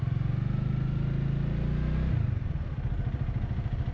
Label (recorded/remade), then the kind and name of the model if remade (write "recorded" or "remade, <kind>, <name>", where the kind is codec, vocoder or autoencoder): recorded